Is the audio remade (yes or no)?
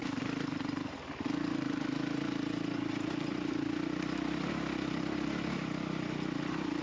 no